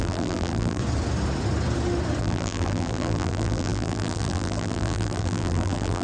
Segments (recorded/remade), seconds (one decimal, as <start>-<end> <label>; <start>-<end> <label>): 0.0-0.8 remade; 0.8-2.2 recorded; 2.2-6.0 remade